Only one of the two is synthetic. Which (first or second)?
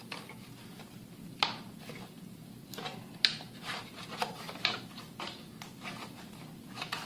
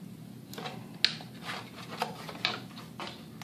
first